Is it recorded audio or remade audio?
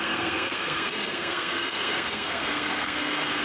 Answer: remade